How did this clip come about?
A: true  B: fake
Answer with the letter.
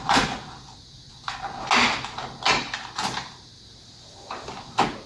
A